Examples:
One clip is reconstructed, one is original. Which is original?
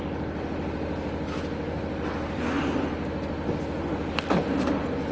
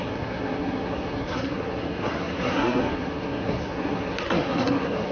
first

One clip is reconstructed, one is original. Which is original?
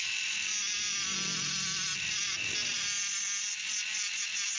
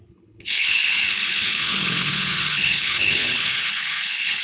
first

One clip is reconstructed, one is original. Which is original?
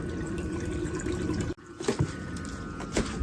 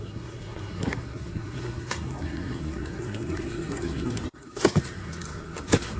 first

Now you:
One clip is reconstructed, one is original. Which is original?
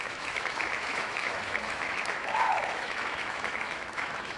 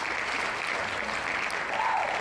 second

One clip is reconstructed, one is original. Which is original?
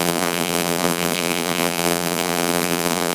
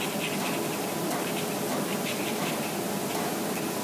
second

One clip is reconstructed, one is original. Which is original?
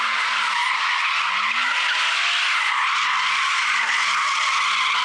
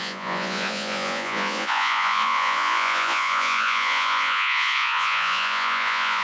first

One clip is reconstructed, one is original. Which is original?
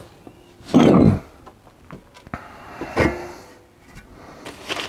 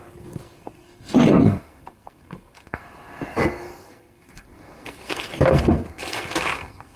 first